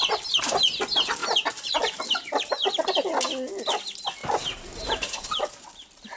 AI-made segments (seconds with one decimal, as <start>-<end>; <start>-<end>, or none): 1.2-2.0; 4.2-5.5